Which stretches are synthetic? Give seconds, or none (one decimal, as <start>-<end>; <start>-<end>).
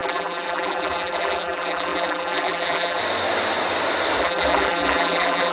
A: 0.0-3.0; 4.2-5.5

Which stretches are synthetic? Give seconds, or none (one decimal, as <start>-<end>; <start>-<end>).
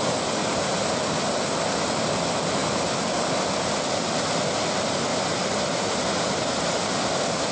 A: 0.4-1.0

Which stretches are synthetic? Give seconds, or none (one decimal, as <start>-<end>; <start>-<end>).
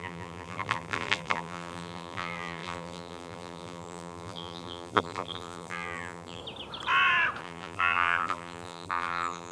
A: 0.0-6.4; 7.4-9.5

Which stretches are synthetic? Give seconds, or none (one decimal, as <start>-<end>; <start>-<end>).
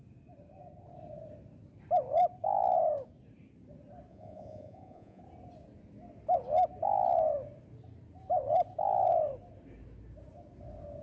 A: 4.1-5.2